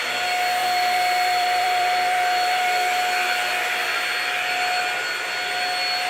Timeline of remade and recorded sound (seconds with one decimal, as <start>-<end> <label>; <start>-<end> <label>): 0.0-0.6 recorded; 0.6-3.0 remade; 3.0-6.1 recorded